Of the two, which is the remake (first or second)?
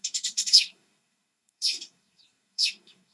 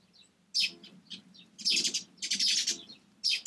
first